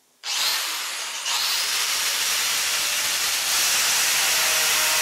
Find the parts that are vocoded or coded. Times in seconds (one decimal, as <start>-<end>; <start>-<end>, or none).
0.5-3.5